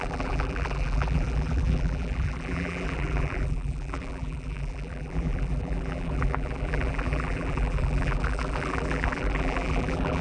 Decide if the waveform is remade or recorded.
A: remade